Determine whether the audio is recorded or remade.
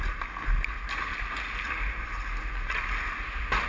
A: recorded